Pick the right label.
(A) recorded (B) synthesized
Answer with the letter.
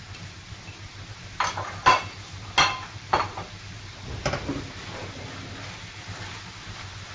A